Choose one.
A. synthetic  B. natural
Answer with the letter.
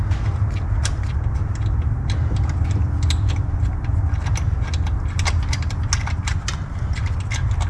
B